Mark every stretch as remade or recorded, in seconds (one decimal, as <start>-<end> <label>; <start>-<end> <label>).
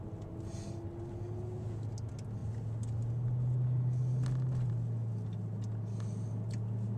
0.0-7.0 recorded